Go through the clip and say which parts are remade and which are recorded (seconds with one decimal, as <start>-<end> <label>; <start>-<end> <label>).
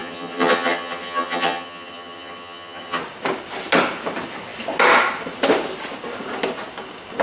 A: 0.0-3.0 remade; 3.0-7.2 recorded